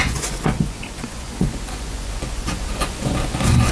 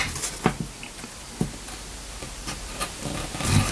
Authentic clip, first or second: second